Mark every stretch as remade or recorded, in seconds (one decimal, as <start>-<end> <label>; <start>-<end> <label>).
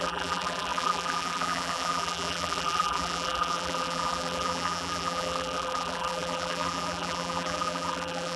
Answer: 0.0-8.4 remade